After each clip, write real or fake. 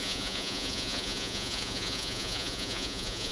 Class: fake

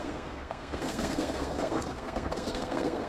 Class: fake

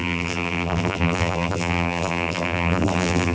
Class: fake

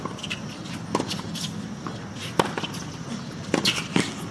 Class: real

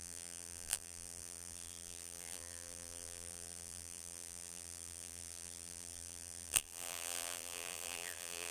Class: fake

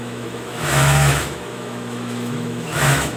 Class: fake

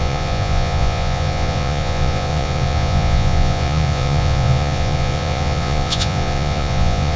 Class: fake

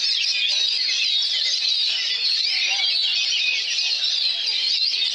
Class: real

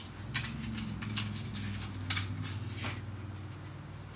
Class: real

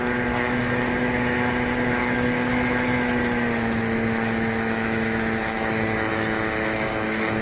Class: fake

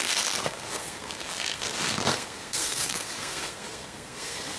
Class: fake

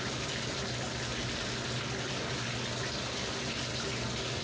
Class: real